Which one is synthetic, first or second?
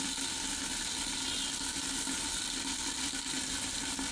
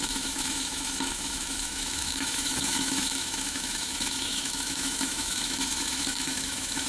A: second